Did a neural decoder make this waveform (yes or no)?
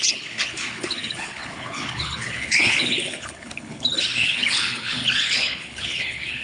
yes